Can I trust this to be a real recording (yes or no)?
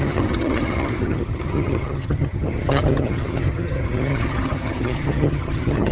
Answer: no